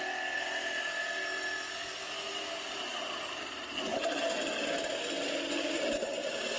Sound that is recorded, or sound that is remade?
recorded